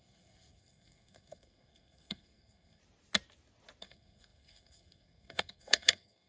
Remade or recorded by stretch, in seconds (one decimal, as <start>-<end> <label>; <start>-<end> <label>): 0.0-2.8 remade; 2.8-3.8 recorded; 3.8-6.3 remade